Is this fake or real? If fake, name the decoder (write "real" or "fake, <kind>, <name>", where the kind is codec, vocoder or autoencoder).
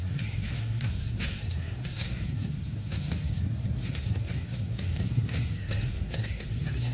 fake, codec, SNAC